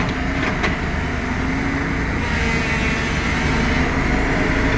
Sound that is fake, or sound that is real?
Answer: real